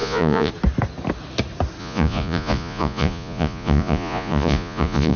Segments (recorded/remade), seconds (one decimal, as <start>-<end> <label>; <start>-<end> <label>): 0.0-0.5 remade; 0.5-1.8 recorded; 1.8-5.2 remade